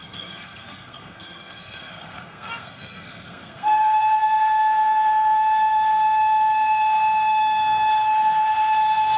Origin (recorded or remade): remade